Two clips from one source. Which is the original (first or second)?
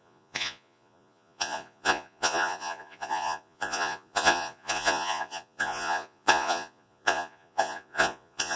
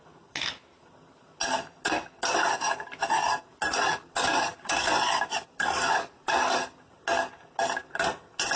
second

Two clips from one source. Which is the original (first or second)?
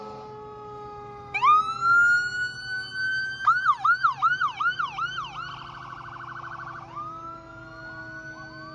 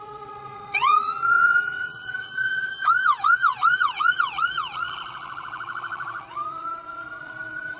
first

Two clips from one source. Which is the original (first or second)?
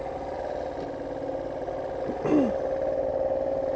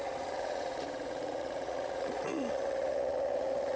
first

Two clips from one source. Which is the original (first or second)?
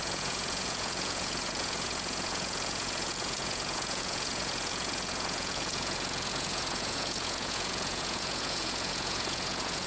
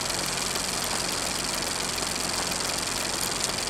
second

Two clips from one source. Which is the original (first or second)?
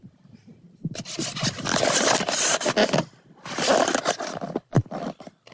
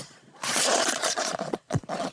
first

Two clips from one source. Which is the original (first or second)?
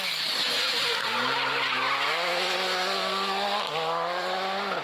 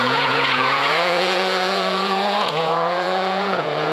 first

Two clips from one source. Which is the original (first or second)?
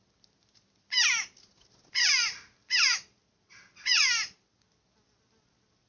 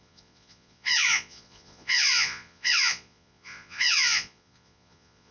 first